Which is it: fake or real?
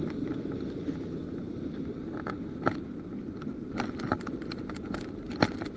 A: real